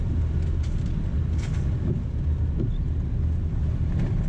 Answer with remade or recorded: recorded